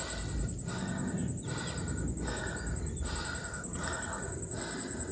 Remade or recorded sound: recorded